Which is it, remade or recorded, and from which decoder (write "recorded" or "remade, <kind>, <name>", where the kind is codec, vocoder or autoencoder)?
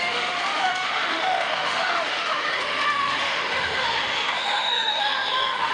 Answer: remade, autoencoder, DAC-VAE